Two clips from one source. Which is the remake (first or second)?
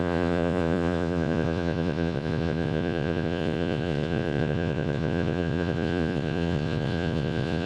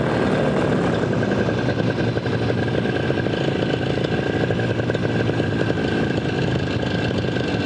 first